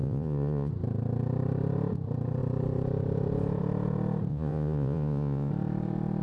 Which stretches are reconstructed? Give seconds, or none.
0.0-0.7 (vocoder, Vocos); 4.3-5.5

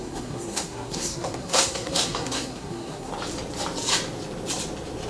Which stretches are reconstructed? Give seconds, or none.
0.0-3.1 (codec, SNAC)

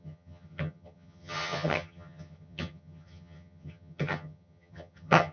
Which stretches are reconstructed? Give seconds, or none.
0.0-5.3 (vocoder, HiFi-GAN)

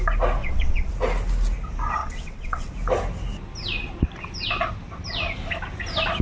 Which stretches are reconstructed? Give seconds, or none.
0.4-0.9 (vocoder, WaveNeXt); 2.0-2.7

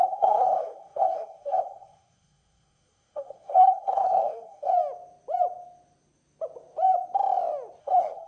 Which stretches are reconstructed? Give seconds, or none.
0.0-4.7 (codec, SNAC); 7.8-8.3

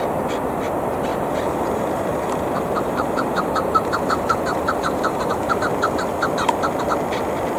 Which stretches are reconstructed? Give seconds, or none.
1.1-5.6 (vocoder, BigVGAN v2)

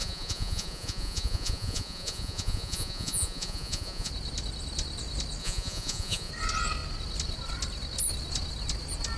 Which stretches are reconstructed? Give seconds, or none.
0.0-4.1 (vocoder, Vocos); 5.4-6.3

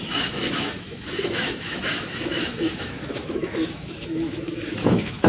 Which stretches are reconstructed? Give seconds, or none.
0.0-5.3 (autoencoder, DAC-VAE)